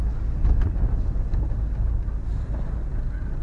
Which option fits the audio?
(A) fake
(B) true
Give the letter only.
B